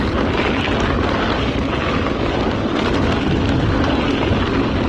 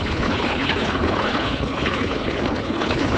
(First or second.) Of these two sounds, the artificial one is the second